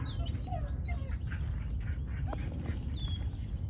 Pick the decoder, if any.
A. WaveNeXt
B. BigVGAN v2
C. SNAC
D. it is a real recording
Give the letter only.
D